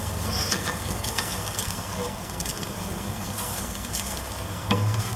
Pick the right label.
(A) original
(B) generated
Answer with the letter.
B